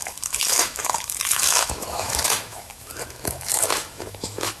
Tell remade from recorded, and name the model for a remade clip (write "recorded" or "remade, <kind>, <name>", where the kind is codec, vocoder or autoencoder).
remade, autoencoder, DAC-VAE